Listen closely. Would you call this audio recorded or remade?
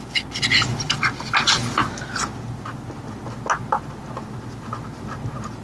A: recorded